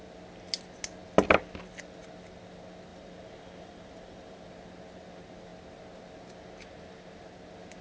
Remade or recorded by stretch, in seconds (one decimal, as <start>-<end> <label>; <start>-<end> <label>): 0.0-2.9 recorded; 2.9-4.4 remade; 4.4-7.8 recorded